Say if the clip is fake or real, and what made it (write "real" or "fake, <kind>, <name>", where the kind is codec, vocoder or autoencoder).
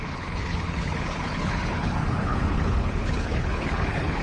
fake, codec, HILCodec